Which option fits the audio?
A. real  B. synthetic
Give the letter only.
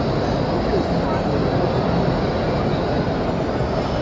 A